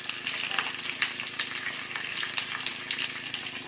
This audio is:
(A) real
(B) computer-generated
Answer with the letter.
A